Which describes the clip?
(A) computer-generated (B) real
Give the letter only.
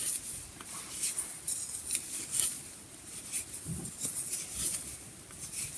B